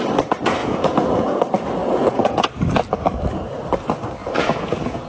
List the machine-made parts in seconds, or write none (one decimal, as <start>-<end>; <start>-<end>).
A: 0.6-1.4; 1.8-2.5; 4.2-5.1